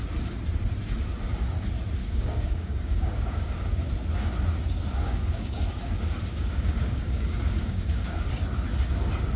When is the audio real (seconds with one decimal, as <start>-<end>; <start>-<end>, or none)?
0.0-2.0; 3.9-5.0; 5.8-6.3; 8.3-9.4